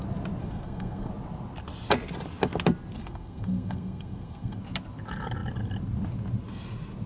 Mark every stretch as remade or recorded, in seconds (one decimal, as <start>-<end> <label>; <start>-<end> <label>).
0.0-0.4 recorded; 0.4-1.1 remade; 1.1-3.0 recorded; 3.0-4.6 remade; 4.6-7.1 recorded